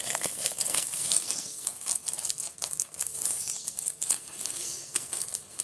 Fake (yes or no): yes